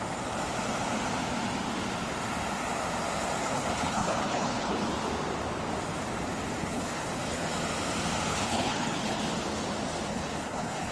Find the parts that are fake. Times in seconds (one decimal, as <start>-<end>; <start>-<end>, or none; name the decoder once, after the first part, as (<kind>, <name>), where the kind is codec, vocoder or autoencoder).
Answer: 3.4-4.9 (codec, HILCodec); 6.6-7.5; 8.3-9.2; 10.1-10.9